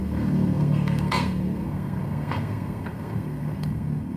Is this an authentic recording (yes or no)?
no